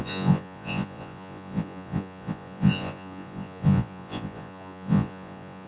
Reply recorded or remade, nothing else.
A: remade